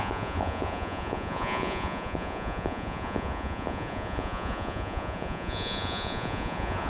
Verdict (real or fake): fake